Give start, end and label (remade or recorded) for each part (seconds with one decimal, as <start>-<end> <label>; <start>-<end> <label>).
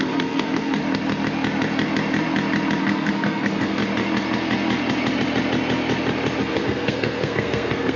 0.0-0.8 remade; 0.8-2.8 recorded; 2.8-3.8 remade; 3.8-6.4 recorded; 6.4-8.0 remade